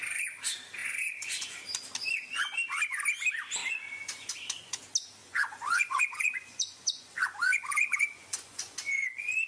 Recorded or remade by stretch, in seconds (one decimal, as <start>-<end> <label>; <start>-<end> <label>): 0.0-0.8 recorded; 0.8-1.6 remade; 1.6-3.6 recorded; 3.6-4.8 remade; 4.8-5.2 recorded; 5.2-9.5 remade